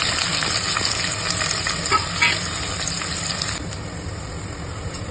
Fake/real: real